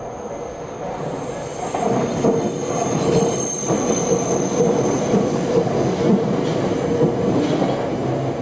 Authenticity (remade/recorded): recorded